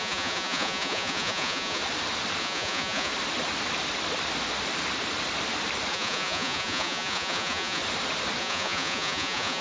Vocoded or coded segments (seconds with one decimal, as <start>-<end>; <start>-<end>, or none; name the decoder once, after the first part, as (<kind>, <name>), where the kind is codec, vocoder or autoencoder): 0.0-1.8 (vocoder, Vocos); 2.4-3.1; 5.9-7.8; 8.4-9.6